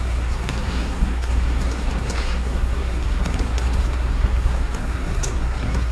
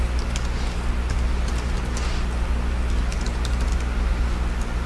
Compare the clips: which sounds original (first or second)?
second